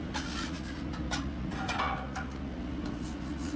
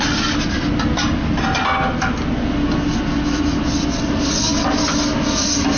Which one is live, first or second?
second